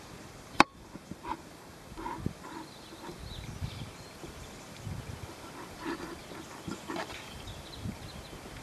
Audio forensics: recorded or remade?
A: remade